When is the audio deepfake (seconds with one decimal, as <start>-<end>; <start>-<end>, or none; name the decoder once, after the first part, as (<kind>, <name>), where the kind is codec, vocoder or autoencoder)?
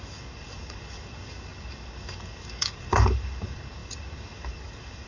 0.0-5.1 (codec, DAC)